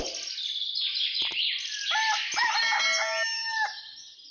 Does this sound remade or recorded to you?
recorded